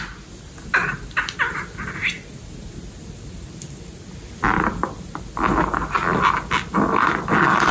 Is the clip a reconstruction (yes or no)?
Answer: no